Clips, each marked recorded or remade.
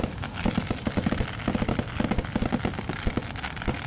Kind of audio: recorded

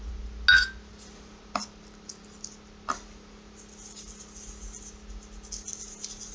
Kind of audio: recorded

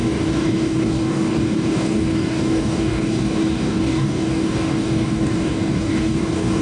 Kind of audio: remade